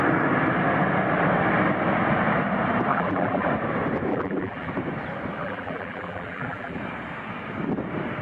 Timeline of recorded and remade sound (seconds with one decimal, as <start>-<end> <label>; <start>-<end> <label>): 0.0-2.9 recorded; 2.9-3.5 remade; 3.5-4.1 recorded; 4.1-4.7 remade; 4.7-5.4 recorded; 5.4-6.8 remade; 6.8-8.2 recorded